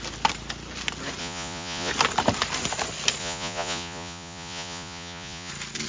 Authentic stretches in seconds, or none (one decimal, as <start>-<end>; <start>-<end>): 0.0-1.2; 1.9-3.2; 5.5-5.9